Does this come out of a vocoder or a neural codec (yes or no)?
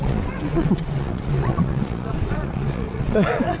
yes